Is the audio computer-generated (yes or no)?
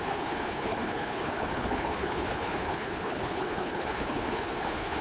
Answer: yes